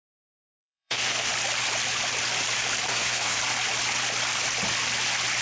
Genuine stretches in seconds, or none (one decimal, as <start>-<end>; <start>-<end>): 0.0-0.6; 1.3-2.9; 3.4-5.4